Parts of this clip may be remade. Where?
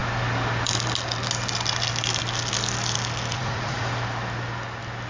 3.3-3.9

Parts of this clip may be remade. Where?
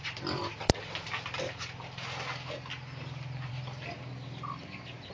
none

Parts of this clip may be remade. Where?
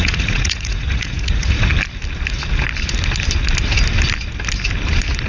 0.0-1.7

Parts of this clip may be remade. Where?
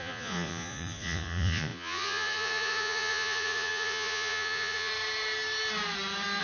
0.0-4.9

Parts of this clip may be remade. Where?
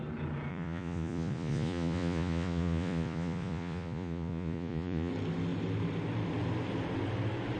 0.5-5.1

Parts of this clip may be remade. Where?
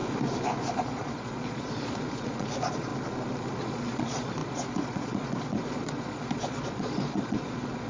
0.8-2.9; 3.6-7.9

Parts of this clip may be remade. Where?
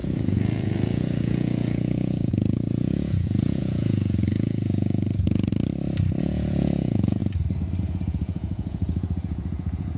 0.0-5.5; 6.2-7.2; 7.8-10.0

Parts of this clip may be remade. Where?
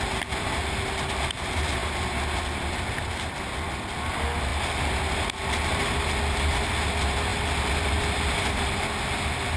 none